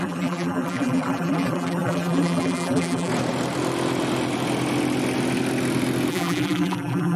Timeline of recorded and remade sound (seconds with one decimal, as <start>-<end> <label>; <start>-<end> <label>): 0.0-3.1 remade; 3.1-6.1 recorded; 6.1-7.2 remade